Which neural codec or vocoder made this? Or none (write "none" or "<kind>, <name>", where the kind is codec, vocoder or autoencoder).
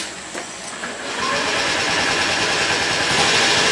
vocoder, Vocos